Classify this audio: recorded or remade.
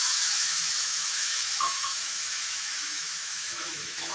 remade